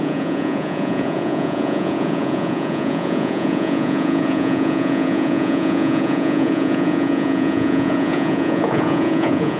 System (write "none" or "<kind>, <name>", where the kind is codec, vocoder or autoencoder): vocoder, Vocos